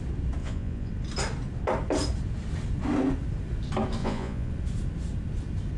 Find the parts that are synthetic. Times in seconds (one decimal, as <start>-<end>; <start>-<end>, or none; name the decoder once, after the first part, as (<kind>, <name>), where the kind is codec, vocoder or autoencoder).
0.4-0.9 (vocoder, Vocos); 4.0-4.5